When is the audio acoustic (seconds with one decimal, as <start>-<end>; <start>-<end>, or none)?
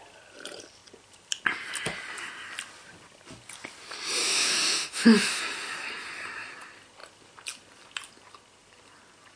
0.0-4.2; 5.4-9.4